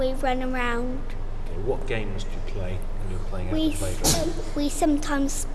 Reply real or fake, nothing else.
real